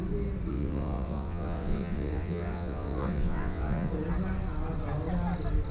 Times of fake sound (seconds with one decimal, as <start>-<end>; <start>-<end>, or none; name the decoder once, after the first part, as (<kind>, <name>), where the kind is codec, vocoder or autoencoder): 0.5-3.9 (vocoder, WaveNeXt)